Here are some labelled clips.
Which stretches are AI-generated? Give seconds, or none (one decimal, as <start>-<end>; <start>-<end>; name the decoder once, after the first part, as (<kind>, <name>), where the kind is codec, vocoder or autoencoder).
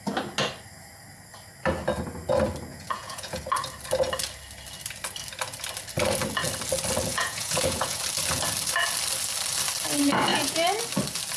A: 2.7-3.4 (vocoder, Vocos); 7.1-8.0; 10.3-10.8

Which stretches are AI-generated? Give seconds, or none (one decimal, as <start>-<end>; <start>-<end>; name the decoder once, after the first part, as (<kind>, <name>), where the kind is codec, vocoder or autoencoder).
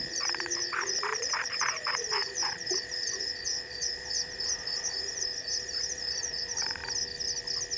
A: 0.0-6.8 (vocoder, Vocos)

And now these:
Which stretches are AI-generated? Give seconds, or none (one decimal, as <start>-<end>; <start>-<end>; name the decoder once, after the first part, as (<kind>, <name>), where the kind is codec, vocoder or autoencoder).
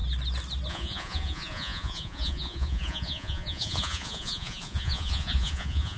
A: 0.7-6.0 (vocoder, Vocos)